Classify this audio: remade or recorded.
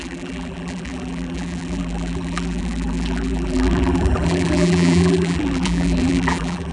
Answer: remade